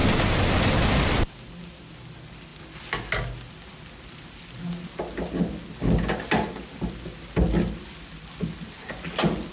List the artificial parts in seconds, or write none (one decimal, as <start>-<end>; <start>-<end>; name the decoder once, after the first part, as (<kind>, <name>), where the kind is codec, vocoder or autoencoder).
0.0-0.5 (vocoder, BigVGAN v2)